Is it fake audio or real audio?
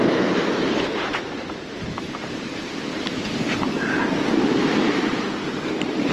fake